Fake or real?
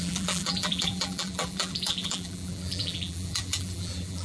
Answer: fake